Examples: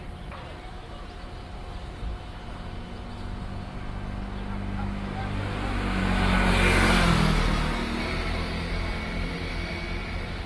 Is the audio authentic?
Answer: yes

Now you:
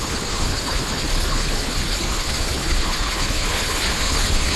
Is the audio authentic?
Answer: no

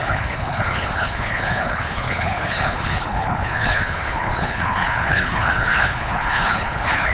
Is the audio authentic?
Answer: no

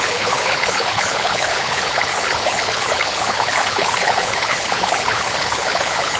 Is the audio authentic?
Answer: no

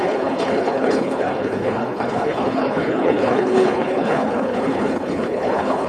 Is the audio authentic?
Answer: no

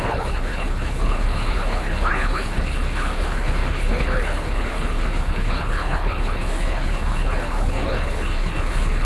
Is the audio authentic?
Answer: no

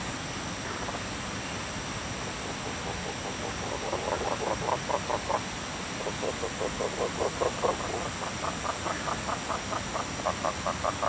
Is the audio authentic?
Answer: yes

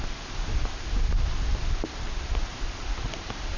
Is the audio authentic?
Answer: yes